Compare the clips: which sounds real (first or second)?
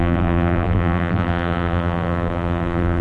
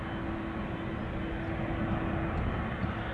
second